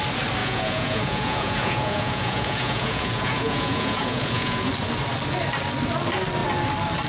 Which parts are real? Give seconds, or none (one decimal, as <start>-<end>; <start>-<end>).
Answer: 0.0-0.4; 4.7-7.1